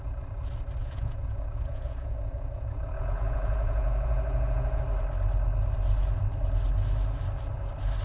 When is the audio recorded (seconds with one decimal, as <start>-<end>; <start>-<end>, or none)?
0.0-0.8; 4.8-8.0